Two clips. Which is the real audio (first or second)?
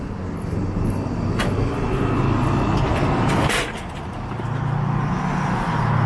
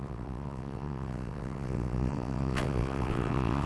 first